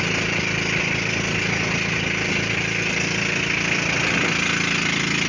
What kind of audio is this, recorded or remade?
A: recorded